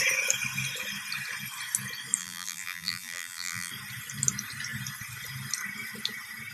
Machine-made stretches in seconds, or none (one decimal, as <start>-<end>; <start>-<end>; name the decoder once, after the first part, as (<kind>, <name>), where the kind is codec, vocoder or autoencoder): 2.2-3.7 (vocoder, BigVGAN v2)